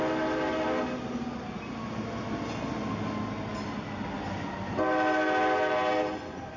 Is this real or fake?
real